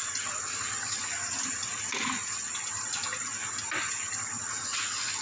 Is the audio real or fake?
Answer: real